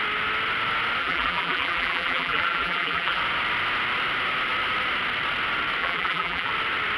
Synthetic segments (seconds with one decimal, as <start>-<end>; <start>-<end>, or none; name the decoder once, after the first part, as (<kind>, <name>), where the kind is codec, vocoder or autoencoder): 1.0-3.2 (vocoder, BigVGAN v2); 5.8-6.5